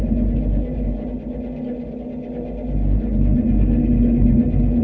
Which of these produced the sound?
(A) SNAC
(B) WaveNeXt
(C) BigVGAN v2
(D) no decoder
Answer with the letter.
D